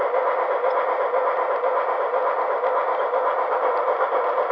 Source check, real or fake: real